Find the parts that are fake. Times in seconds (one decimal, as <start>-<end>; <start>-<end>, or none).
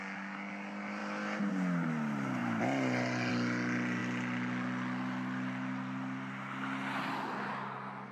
none